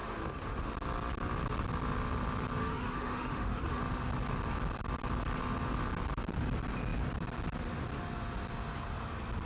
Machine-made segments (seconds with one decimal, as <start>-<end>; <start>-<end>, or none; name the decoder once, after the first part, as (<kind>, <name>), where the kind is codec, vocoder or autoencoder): 0.0-0.7 (autoencoder, DAC-VAE); 2.6-3.8